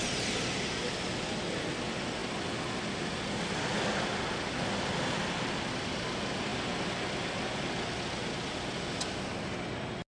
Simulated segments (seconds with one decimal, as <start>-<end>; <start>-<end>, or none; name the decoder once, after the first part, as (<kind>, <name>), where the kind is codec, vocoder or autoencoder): none